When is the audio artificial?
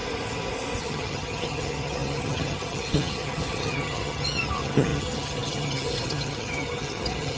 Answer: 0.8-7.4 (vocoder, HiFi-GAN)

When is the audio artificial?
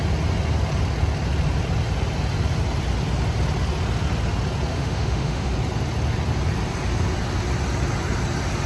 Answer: 4.7-5.5 (autoencoder, DAC-VAE)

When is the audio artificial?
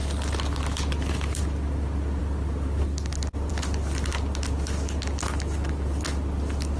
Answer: none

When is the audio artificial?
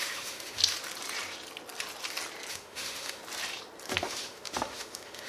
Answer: 0.0-0.6 (autoencoder, DAC-VAE); 2.5-3.2; 4.0-5.3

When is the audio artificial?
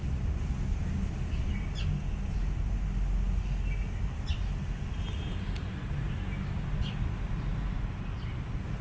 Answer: none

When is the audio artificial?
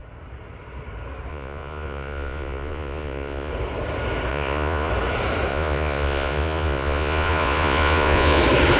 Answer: 1.3-3.5 (vocoder, Vocos); 4.3-4.9; 5.5-8.4